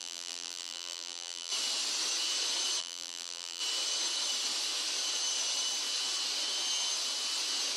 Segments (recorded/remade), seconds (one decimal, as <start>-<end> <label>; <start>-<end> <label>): 0.0-1.5 remade; 1.5-2.8 recorded; 2.8-3.6 remade; 3.6-7.8 recorded